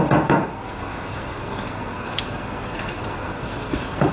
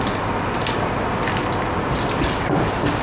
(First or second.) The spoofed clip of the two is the first